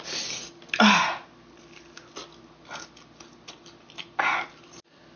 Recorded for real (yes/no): yes